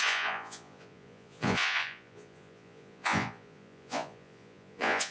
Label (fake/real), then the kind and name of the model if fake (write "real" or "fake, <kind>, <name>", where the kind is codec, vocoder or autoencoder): fake, vocoder, Vocos